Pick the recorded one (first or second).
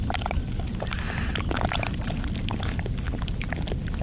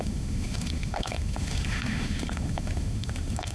first